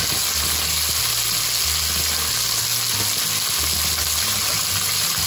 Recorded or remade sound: recorded